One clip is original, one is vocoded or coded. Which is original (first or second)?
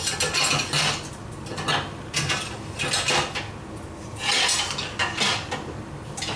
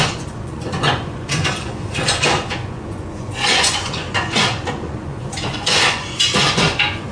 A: first